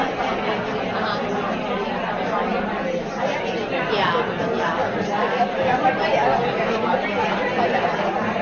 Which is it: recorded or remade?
recorded